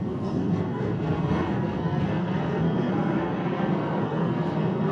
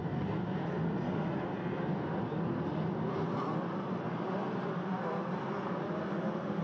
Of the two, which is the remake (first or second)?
first